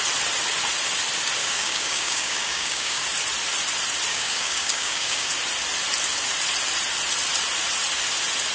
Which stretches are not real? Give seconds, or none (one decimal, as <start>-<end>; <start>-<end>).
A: 1.4-3.0; 4.1-5.3